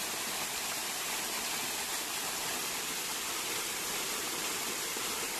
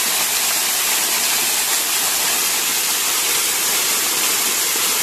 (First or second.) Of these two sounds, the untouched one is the second